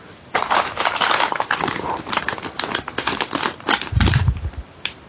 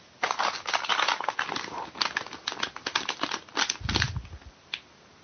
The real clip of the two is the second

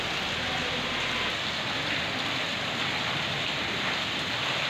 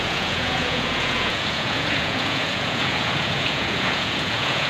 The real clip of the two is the first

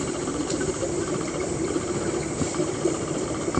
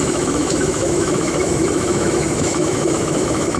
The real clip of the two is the first